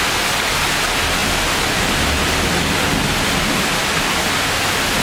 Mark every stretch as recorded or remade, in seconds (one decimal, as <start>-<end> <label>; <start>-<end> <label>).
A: 0.0-5.0 recorded